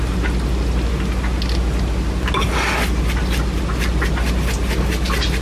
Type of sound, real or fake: real